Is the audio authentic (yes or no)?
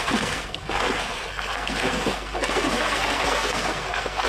no